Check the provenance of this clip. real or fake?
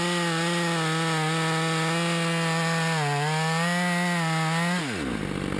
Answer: real